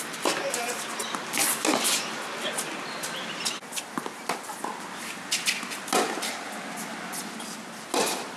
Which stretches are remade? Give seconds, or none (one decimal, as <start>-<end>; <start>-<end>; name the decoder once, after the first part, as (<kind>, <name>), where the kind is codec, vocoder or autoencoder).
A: none